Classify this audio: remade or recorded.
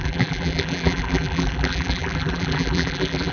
remade